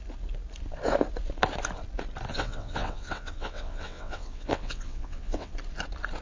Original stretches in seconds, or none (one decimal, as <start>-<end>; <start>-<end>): 0.0-2.3; 5.5-6.2